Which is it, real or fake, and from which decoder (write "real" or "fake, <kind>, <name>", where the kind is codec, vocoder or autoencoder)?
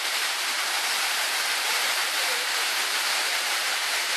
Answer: fake, vocoder, BigVGAN v2